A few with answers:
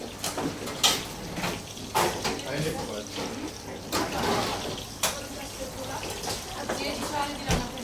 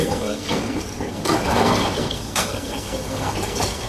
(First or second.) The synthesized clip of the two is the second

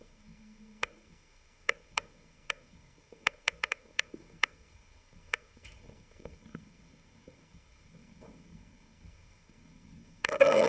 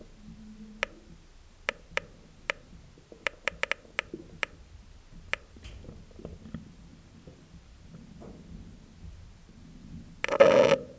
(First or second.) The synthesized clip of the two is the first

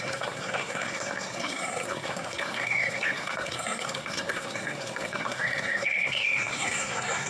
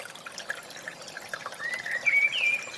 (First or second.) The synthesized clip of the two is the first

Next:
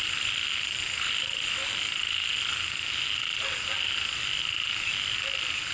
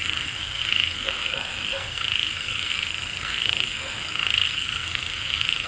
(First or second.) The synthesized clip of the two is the second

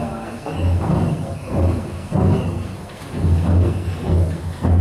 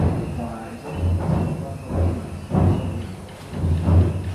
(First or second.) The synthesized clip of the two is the first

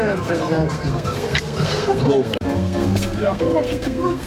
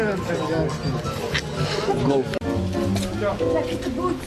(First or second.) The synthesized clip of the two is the first